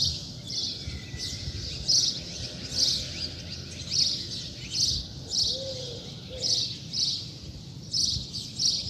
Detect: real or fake real